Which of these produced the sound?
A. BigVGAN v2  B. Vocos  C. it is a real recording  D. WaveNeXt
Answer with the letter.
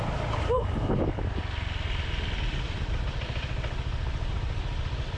C